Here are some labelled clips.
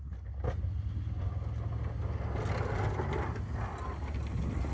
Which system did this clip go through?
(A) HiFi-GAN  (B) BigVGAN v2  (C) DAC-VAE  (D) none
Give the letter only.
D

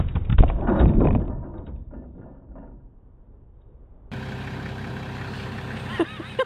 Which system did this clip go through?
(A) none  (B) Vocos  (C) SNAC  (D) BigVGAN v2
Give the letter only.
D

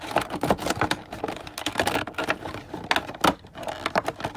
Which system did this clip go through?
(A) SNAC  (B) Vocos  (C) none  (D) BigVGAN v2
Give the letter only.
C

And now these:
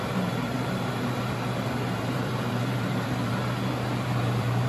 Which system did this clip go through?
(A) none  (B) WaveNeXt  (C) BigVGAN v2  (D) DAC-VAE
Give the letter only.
C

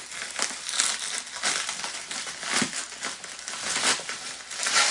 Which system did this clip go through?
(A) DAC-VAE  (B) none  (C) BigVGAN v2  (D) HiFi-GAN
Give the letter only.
B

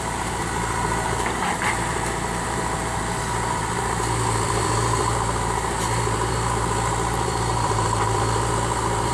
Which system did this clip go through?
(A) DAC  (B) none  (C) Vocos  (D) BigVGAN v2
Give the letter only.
D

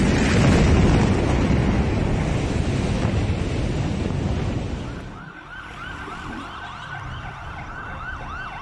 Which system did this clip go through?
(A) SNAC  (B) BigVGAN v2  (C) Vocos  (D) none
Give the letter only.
D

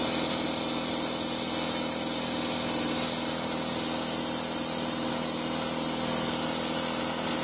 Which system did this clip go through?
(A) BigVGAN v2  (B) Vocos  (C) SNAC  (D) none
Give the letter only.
D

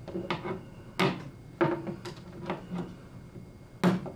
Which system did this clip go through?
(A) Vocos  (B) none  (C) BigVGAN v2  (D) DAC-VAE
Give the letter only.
B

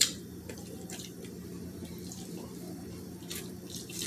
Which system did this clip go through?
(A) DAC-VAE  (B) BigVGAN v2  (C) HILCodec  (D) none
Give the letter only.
B